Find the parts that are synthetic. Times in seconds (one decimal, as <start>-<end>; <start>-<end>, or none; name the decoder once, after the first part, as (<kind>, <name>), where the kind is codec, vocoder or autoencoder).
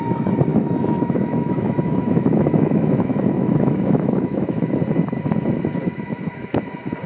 0.5-4.8 (autoencoder, DAC-VAE); 5.8-6.6